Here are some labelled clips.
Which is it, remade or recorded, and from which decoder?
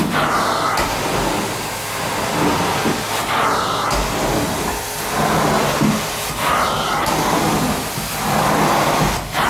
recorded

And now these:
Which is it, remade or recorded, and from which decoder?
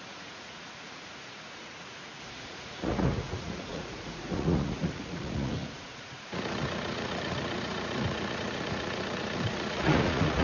remade, vocoder, Vocos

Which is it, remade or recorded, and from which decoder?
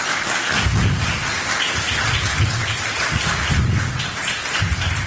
recorded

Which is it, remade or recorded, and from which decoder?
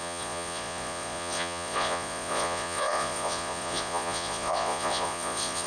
remade, vocoder, Vocos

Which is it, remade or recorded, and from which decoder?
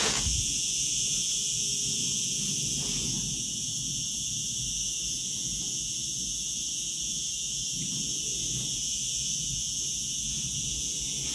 remade, vocoder, Vocos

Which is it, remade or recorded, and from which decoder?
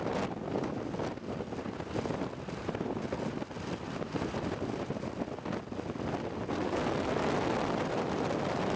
recorded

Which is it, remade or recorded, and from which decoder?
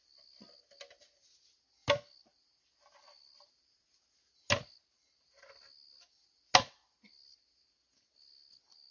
recorded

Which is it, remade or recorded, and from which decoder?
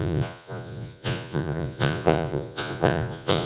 remade, vocoder, Vocos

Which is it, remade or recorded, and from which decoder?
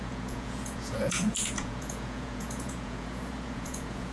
remade, vocoder, Vocos